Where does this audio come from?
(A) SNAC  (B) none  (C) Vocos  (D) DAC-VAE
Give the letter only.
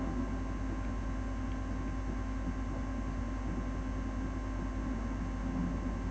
B